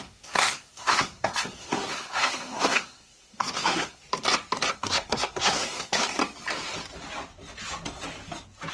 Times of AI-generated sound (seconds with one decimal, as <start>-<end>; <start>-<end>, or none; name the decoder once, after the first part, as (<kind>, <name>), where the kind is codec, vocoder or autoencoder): 0.0-4.0 (codec, SNAC); 4.7-6.2